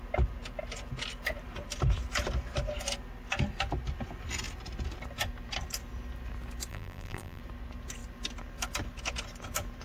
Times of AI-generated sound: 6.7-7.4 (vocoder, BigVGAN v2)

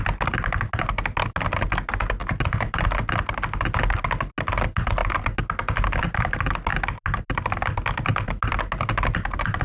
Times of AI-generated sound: 2.2-3.1 (vocoder, BigVGAN v2)

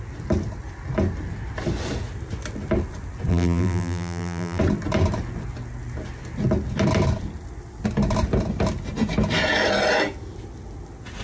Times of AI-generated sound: 3.3-4.6 (vocoder, BigVGAN v2)

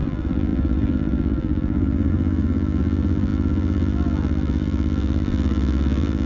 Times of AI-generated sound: 0.0-6.3 (vocoder, BigVGAN v2)

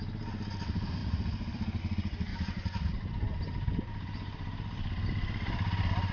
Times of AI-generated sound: 1.0-1.8 (vocoder, BigVGAN v2); 2.3-6.1

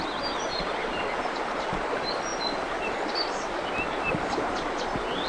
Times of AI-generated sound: none

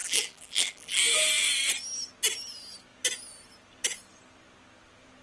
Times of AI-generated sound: 0.0-1.0 (vocoder, BigVGAN v2)